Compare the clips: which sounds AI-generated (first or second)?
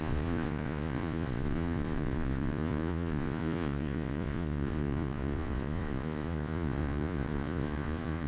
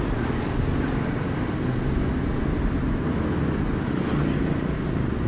first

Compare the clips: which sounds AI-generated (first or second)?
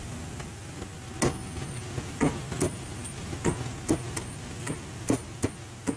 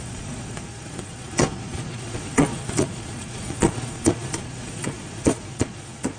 second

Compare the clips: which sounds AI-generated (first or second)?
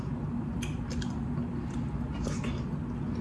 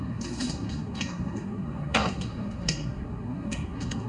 second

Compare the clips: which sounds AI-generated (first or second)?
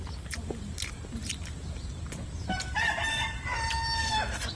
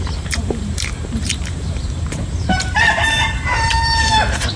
second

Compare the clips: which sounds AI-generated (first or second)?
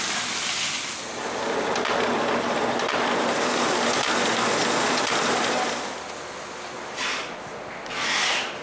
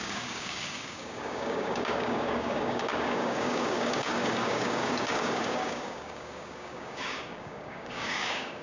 second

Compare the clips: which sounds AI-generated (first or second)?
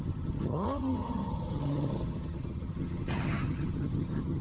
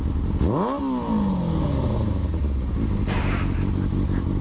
first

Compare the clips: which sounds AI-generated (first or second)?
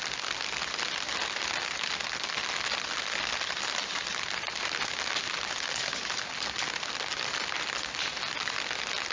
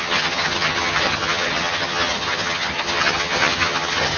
second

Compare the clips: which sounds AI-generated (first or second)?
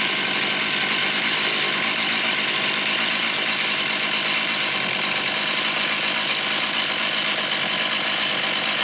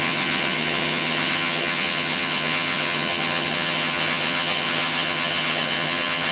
second